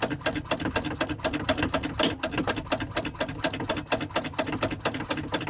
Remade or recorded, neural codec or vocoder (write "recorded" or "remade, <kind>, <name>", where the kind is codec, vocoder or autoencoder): recorded